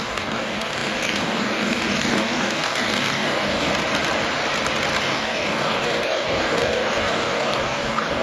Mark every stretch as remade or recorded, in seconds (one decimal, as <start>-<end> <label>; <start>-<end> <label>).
0.0-3.7 remade; 3.7-5.0 recorded; 5.0-8.2 remade

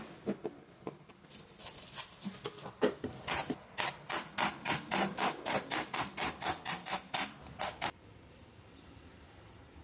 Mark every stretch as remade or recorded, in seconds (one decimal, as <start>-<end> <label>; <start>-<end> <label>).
0.0-9.8 recorded